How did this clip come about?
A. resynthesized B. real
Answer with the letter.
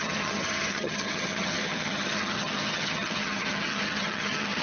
A